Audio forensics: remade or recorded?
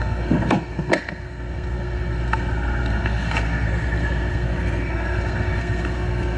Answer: remade